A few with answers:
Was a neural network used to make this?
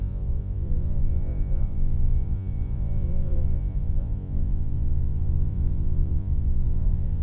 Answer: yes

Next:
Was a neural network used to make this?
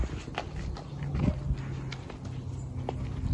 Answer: no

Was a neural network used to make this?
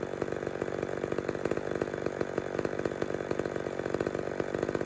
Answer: no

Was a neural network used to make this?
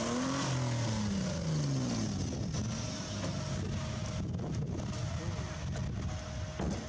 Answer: no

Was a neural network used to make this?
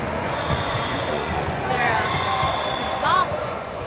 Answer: yes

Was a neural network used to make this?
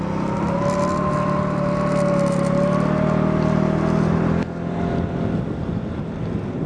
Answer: no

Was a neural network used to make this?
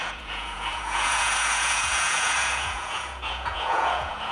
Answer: yes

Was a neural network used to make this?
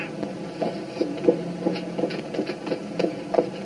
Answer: no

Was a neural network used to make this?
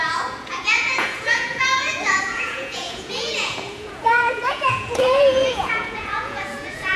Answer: yes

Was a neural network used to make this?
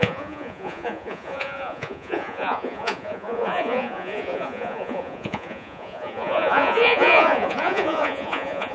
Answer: yes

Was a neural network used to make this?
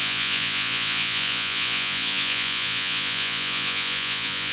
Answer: yes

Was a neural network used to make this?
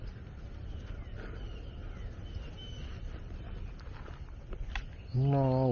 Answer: no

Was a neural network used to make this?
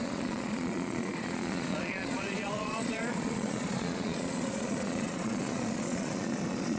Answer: yes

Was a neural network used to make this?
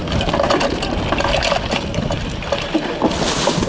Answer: no